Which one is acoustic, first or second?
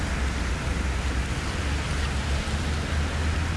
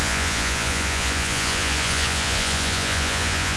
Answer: first